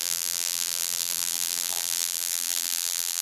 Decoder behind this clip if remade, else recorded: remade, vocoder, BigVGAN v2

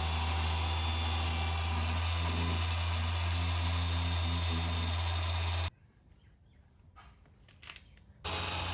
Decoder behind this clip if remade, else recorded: recorded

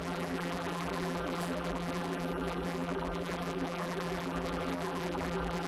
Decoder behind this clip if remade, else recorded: remade, vocoder, BigVGAN v2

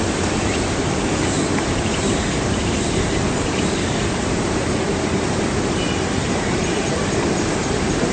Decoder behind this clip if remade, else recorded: remade, vocoder, BigVGAN v2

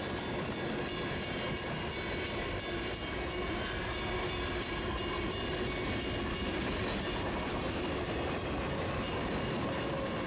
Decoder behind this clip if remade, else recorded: recorded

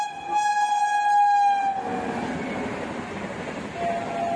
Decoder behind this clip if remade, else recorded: recorded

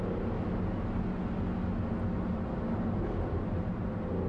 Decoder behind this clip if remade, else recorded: recorded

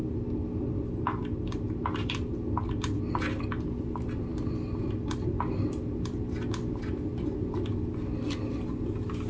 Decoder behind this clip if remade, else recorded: recorded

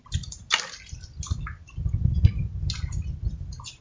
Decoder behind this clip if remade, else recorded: recorded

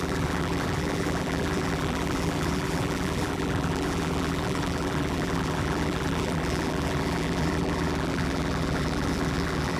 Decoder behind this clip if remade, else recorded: remade, vocoder, BigVGAN v2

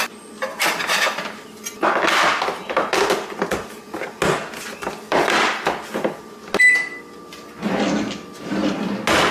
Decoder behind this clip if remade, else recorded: recorded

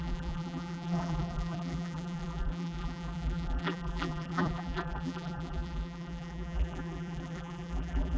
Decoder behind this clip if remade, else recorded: remade, vocoder, BigVGAN v2